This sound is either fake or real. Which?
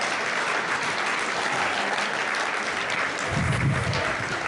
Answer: real